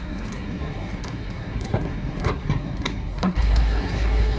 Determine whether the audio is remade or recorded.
remade